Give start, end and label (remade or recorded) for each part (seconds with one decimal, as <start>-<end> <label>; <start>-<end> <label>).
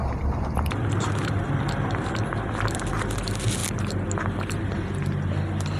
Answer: 0.0-2.9 remade; 2.9-5.8 recorded